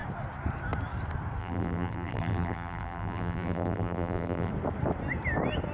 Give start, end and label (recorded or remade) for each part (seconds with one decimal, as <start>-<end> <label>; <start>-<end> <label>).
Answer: 0.0-1.4 recorded; 1.4-4.5 remade; 4.5-5.7 recorded